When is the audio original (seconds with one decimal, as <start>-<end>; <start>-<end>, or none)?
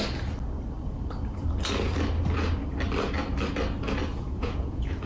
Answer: 0.0-4.1